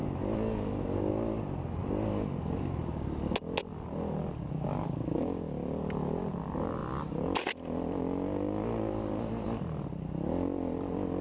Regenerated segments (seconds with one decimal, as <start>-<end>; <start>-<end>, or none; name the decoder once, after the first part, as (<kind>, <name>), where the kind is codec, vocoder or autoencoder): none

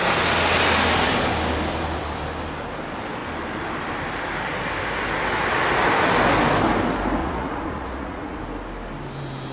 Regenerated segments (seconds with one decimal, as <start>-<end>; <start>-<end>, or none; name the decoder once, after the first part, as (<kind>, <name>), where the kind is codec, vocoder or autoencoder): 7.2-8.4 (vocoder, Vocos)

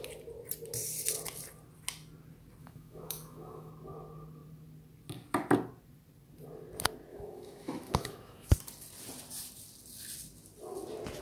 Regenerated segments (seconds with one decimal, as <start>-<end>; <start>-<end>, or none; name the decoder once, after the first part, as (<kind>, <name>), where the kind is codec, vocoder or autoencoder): 2.6-3.7 (autoencoder, DAC-VAE); 7.1-8.5

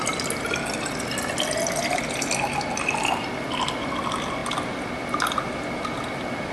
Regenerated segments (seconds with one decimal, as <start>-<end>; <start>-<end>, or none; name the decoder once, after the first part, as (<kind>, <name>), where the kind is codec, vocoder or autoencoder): none

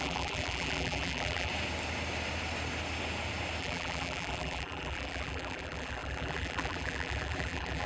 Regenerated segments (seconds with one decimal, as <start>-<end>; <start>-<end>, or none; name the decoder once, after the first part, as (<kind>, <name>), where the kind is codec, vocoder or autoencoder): 0.0-1.5 (vocoder, BigVGAN v2); 3.6-7.9

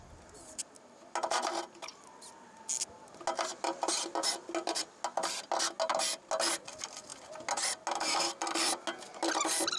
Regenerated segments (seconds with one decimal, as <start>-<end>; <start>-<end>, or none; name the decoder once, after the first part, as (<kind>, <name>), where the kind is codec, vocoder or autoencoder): none